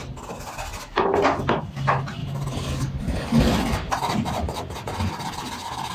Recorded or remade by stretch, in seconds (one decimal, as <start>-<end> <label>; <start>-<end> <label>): 0.0-2.2 recorded; 2.2-3.9 remade; 3.9-5.9 recorded